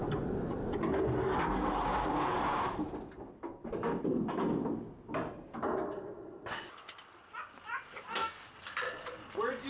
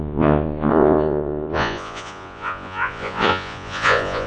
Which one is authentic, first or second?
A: first